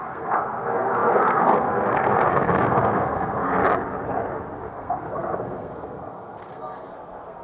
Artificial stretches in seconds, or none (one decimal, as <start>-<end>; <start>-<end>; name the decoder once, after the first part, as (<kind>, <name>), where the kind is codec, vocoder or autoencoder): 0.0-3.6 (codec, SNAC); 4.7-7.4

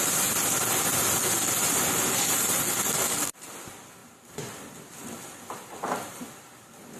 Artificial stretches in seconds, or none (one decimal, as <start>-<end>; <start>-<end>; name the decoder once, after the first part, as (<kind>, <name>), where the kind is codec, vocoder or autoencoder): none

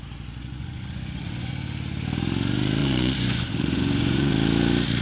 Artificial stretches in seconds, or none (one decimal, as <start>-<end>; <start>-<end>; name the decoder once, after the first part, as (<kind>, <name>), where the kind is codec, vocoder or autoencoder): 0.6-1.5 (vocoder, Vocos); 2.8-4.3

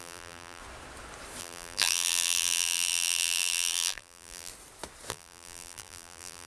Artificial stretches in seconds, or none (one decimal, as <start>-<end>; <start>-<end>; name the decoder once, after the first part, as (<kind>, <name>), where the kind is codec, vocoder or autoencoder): 0.0-0.6 (vocoder, BigVGAN v2); 1.4-4.5; 5.1-6.5

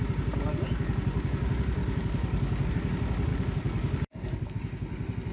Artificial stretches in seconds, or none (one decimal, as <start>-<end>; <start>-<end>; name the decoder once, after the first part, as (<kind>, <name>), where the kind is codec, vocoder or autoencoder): 1.8-2.7 (codec, DAC); 3.3-4.5